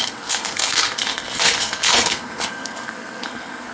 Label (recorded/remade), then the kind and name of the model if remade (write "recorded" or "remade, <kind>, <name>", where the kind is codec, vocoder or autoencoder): remade, codec, SNAC